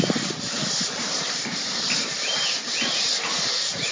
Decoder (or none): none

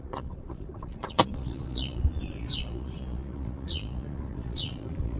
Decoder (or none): vocoder, Vocos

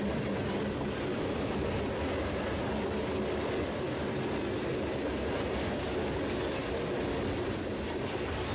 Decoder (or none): none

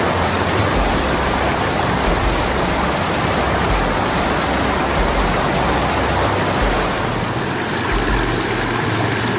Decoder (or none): none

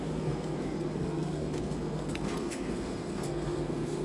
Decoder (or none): codec, SNAC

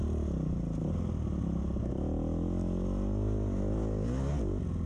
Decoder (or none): none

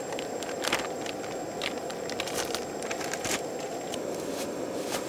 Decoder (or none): none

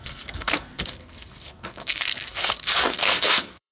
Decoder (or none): codec, SNAC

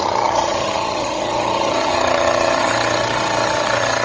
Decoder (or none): vocoder, HiFi-GAN